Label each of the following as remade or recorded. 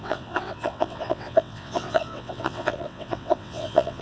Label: remade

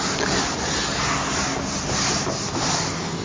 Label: recorded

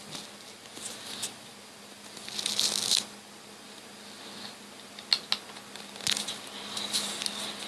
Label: recorded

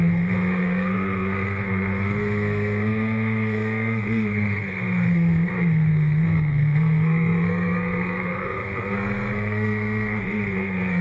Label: remade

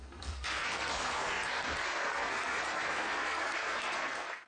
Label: remade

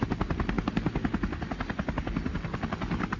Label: recorded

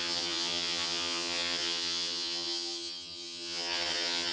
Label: remade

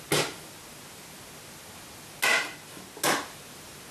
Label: recorded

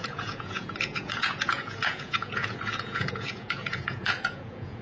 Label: remade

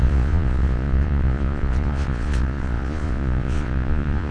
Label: remade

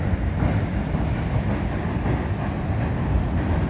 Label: recorded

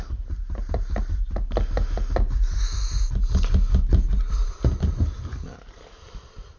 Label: recorded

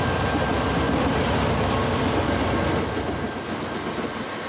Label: recorded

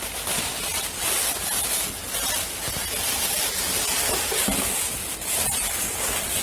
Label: recorded